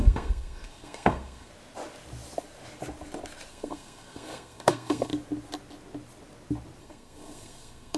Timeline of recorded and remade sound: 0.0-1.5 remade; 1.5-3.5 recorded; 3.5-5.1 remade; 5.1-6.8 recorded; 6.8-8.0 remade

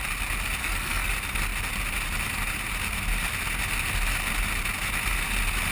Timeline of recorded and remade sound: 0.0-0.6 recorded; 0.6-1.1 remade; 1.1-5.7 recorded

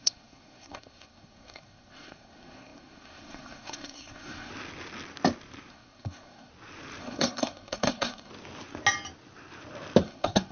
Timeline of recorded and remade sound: 0.0-4.5 remade; 4.5-5.7 recorded; 5.7-6.5 remade; 6.5-7.0 recorded; 7.0-8.3 remade; 8.3-10.0 recorded; 10.0-10.5 remade